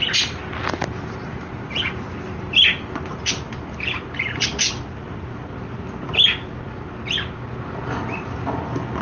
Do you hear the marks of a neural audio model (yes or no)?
no